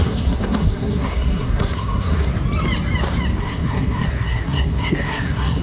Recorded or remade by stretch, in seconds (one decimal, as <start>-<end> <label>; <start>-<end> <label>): 0.0-2.3 remade; 2.3-3.4 recorded; 3.4-5.6 remade